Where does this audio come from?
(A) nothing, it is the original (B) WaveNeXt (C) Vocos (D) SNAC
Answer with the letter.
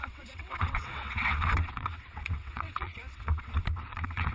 B